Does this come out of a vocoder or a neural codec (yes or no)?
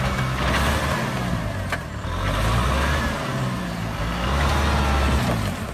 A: no